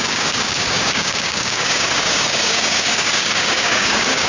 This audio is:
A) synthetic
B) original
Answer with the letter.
A